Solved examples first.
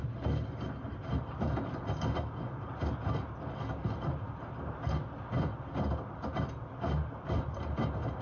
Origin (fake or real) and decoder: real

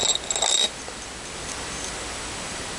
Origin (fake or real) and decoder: real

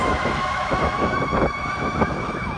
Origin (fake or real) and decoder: fake, autoencoder, DAC-VAE